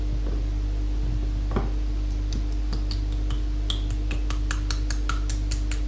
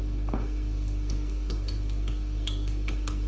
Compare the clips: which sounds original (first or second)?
first